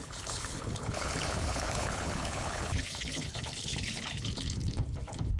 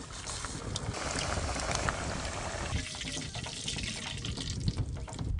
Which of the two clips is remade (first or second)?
first